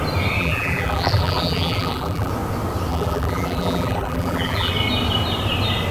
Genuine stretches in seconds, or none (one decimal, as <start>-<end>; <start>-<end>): 0.0-0.4; 2.3-2.9; 4.7-5.9